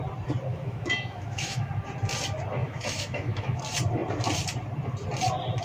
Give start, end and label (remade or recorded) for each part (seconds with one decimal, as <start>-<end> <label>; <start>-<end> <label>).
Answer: 0.0-0.5 recorded; 0.5-1.7 remade; 1.7-2.6 recorded; 2.6-3.6 remade; 3.6-5.6 recorded